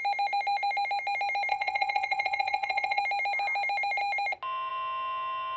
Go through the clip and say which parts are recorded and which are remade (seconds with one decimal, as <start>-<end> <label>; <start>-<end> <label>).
0.0-1.5 recorded; 1.5-3.0 remade; 3.0-5.6 recorded